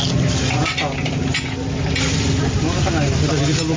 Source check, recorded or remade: recorded